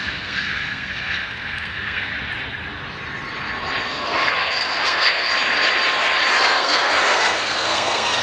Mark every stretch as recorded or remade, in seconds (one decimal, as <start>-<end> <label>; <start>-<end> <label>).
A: 0.0-2.1 remade; 2.1-3.8 recorded; 3.8-5.3 remade; 5.3-6.3 recorded; 6.3-8.2 remade